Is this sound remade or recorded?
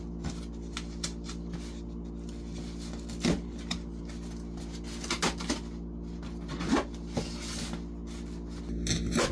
recorded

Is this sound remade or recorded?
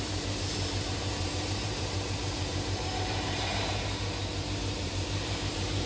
remade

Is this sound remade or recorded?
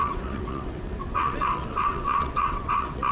remade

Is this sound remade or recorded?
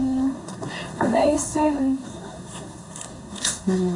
remade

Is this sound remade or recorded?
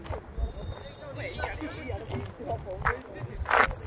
recorded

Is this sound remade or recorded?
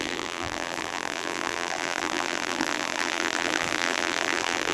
remade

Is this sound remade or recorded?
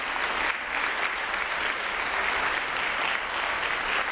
recorded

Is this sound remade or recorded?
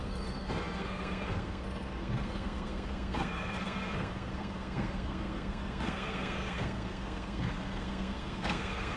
remade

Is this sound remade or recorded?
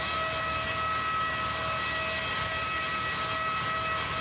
recorded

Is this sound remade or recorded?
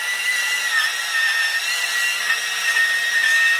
recorded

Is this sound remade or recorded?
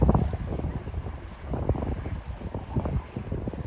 recorded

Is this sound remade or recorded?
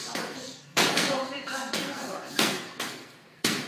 remade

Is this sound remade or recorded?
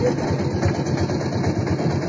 recorded